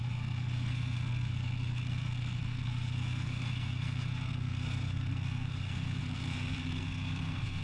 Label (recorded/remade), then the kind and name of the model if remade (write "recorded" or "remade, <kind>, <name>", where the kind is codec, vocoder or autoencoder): remade, codec, SNAC